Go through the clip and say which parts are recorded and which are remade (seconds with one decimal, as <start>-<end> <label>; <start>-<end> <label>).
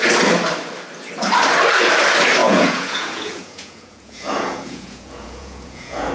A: 0.0-2.4 recorded; 2.4-6.1 remade